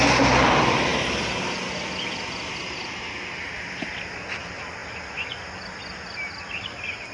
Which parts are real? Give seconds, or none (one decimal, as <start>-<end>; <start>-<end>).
0.0-7.1